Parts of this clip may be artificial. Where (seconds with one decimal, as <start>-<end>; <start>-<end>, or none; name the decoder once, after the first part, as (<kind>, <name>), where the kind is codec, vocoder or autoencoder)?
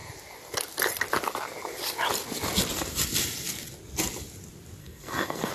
4.8-5.5 (codec, SNAC)